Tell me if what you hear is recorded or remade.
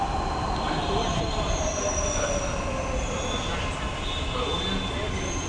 recorded